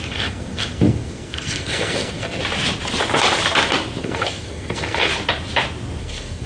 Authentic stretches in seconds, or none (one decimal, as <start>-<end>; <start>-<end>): 2.4-4.0; 5.1-6.0